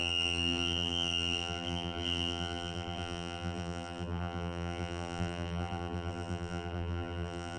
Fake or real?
fake